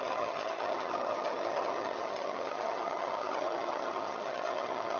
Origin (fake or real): fake